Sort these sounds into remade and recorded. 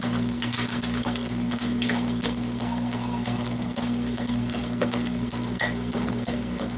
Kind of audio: remade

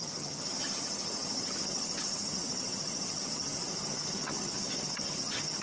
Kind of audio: remade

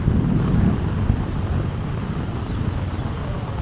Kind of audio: recorded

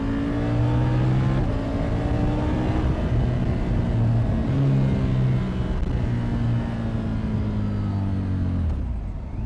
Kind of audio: recorded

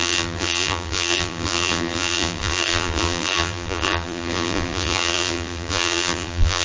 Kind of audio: remade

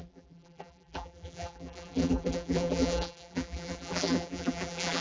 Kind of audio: remade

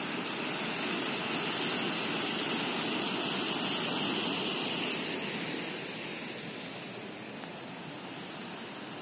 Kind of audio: recorded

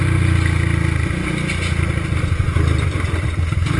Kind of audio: recorded